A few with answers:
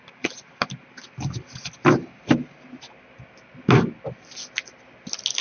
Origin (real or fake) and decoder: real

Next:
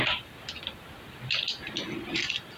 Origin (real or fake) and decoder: real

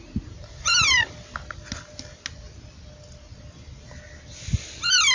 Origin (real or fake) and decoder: real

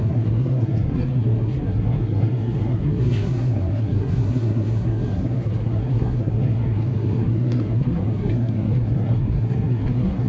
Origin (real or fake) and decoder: fake, codec, SNAC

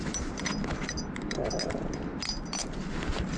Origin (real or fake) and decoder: real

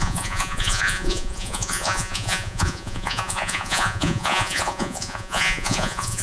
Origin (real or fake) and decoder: fake, vocoder, Vocos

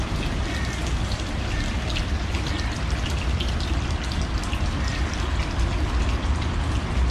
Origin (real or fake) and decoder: real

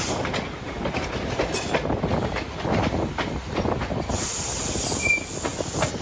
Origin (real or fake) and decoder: real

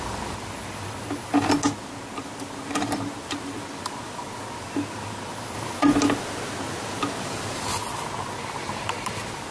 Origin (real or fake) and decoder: real